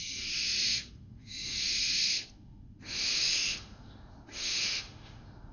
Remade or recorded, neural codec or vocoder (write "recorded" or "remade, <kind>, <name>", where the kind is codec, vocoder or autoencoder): remade, autoencoder, DAC-VAE